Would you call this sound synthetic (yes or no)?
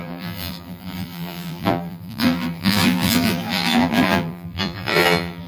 yes